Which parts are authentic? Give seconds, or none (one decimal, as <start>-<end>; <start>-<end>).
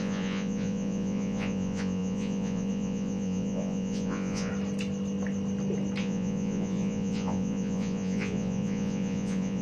4.5-6.0